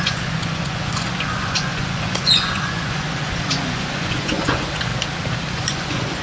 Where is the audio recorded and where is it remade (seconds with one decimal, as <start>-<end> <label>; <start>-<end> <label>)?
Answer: 0.0-4.9 remade; 4.9-5.5 recorded; 5.5-6.2 remade